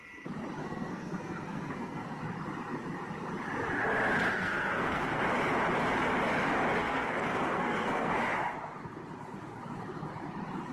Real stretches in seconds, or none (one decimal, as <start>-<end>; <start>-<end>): 0.0-0.6; 2.2-4.3; 5.2-6.8; 8.1-10.7